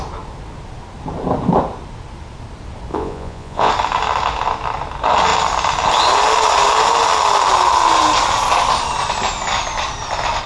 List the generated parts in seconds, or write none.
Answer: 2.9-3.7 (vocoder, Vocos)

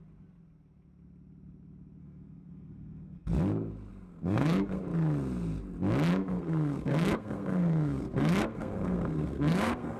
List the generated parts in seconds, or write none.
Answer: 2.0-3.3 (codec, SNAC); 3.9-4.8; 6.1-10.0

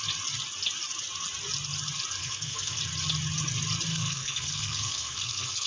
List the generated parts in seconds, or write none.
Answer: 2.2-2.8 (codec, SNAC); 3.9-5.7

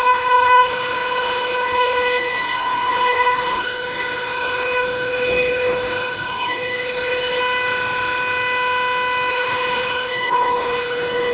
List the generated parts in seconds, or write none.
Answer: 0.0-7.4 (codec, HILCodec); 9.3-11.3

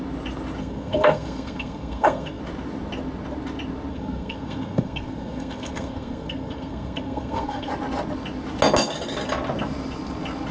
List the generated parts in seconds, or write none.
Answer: 0.6-2.4 (codec, SNAC); 3.9-7.7

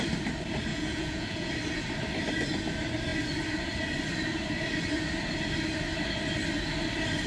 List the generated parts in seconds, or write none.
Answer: 0.7-1.5 (vocoder, Vocos)